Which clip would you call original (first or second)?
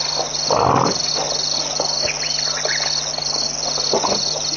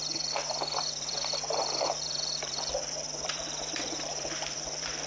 first